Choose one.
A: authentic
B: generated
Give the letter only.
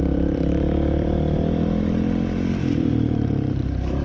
B